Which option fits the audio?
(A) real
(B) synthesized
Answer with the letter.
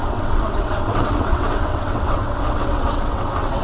B